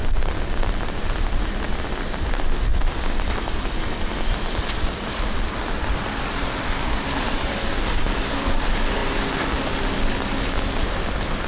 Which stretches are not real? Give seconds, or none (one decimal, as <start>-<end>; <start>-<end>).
none